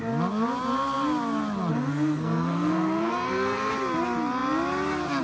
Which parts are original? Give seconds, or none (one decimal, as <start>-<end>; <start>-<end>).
0.0-1.7; 3.7-5.2